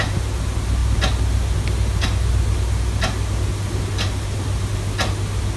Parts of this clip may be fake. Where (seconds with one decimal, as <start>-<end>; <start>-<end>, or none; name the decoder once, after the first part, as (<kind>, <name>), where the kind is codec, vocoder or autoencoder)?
none